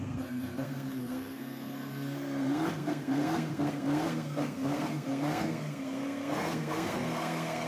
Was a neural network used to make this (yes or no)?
yes